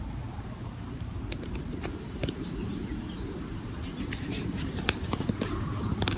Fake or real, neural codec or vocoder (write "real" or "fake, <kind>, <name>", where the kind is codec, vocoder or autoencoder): fake, vocoder, BigVGAN v2